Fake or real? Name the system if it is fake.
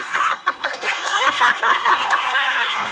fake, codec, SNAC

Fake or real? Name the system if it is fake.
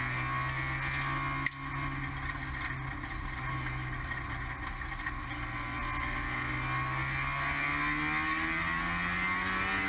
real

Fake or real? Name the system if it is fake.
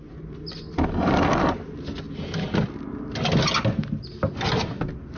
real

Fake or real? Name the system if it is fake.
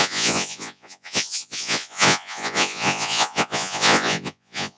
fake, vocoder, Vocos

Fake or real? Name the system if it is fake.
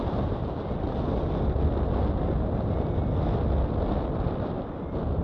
real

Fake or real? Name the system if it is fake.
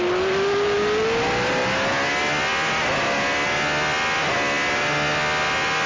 real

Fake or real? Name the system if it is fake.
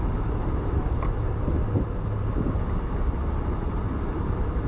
real